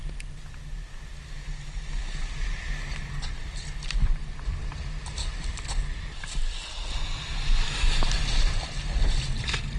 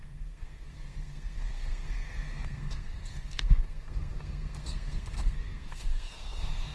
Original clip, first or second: first